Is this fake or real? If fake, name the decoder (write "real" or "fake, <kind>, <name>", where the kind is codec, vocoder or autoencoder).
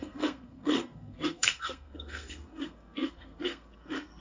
fake, codec, SNAC